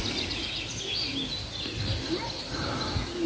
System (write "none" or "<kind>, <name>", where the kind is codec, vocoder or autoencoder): none